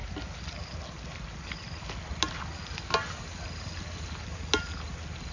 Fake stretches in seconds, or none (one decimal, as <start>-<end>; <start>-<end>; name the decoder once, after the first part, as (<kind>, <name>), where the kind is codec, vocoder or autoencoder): none